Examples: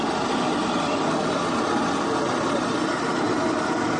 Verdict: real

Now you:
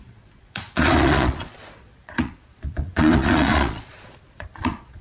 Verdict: fake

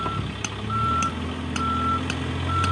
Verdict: real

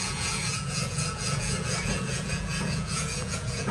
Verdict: fake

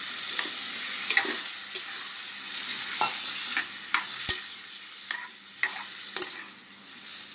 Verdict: real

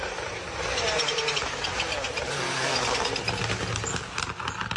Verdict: real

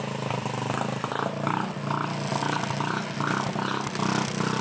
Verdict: real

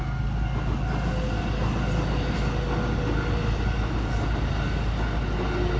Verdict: real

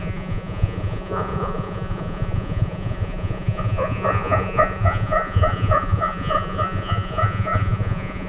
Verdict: fake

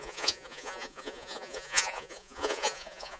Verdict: fake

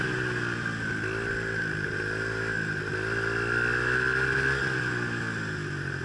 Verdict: real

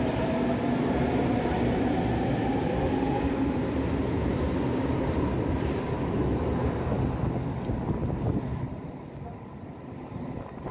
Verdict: real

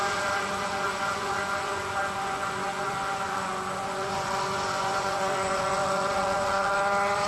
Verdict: fake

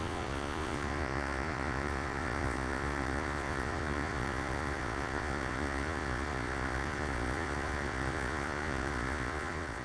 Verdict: fake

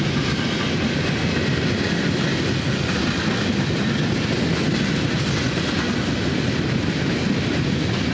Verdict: real